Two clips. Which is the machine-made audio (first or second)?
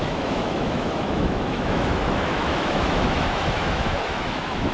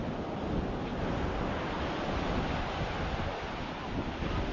first